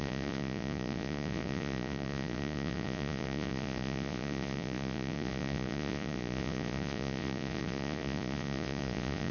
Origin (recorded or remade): remade